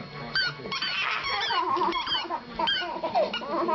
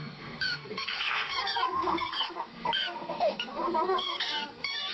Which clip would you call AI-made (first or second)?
second